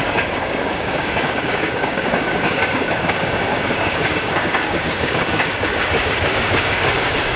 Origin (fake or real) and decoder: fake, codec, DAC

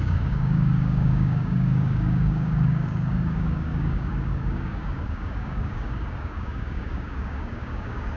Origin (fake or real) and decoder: fake, codec, DAC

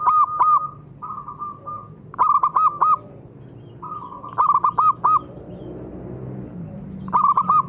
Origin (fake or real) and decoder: real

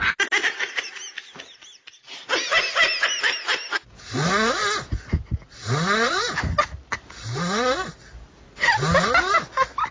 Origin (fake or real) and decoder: real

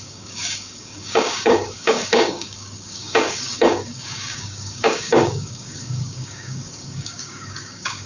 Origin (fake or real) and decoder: fake, codec, DAC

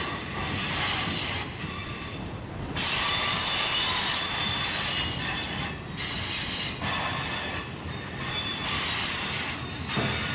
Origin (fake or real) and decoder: real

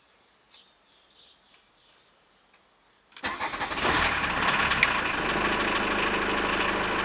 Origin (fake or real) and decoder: real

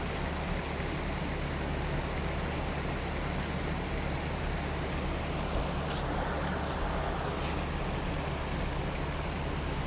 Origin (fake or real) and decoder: real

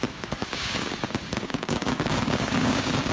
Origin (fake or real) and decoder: fake, codec, DAC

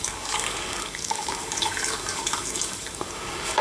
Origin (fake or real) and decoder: fake, codec, DAC